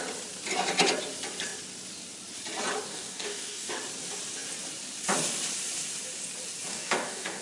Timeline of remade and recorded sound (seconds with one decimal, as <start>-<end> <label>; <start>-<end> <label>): 0.0-2.9 recorded; 2.9-3.7 remade; 3.7-6.7 recorded; 6.7-7.4 remade